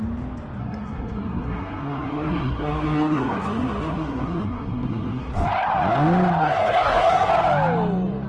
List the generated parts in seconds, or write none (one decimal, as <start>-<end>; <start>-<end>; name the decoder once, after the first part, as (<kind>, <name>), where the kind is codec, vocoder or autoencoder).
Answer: 0.6-5.3 (codec, SNAC); 6.4-7.3